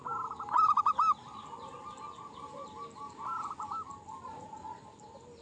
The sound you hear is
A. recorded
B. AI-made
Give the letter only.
A